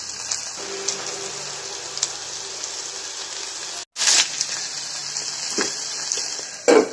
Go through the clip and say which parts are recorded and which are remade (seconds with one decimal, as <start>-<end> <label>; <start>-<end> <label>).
0.0-6.9 recorded